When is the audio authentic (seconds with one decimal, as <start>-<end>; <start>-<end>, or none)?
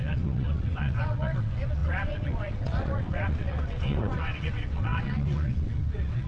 none